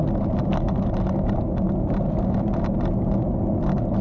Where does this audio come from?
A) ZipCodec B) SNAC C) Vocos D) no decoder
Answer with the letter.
D